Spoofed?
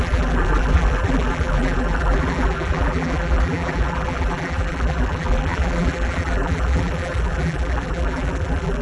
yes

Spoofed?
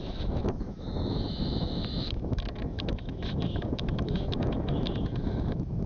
yes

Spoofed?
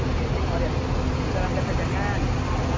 no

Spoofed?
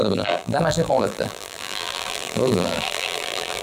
yes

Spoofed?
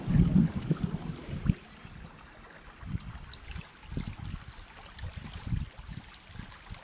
no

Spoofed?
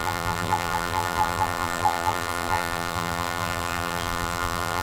yes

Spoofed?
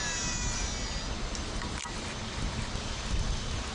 no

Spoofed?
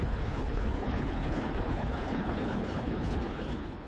yes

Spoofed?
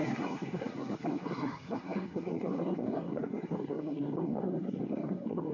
yes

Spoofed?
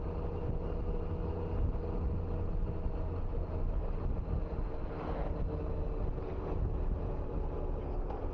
no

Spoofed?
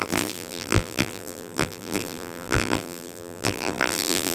yes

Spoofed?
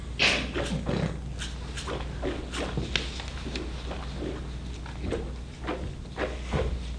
no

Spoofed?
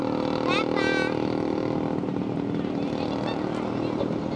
no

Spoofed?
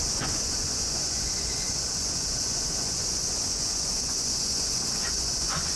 yes